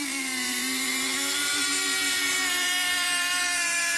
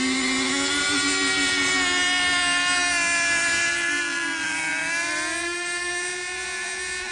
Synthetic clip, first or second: first